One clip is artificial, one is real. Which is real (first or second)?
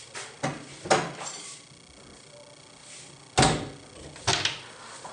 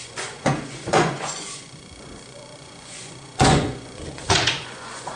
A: first